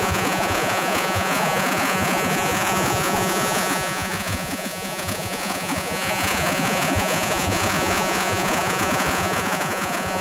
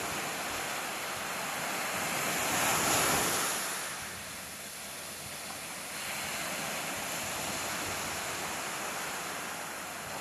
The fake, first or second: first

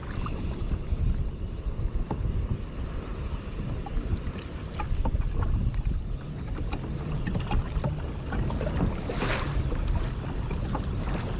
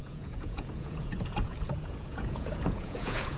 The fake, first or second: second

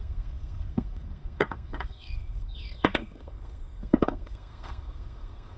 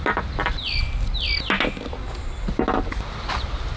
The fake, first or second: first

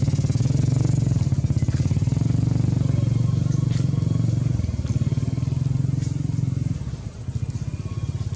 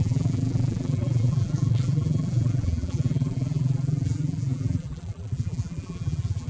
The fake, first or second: second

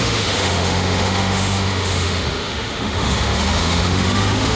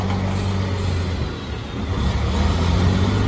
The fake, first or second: first